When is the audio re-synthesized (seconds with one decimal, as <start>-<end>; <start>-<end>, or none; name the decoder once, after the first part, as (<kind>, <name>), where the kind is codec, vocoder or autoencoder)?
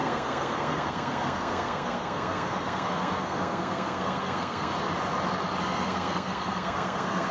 0.0-4.7 (codec, SNAC); 5.6-7.3